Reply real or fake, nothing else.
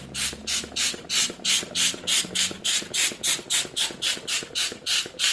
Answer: real